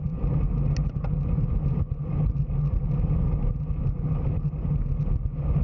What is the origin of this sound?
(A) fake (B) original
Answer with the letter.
B